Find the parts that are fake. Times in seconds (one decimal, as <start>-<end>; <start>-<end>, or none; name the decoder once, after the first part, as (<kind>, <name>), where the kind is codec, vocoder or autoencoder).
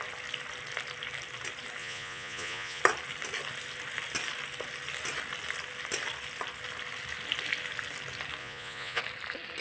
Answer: 1.8-2.8 (vocoder, Vocos); 8.4-9.0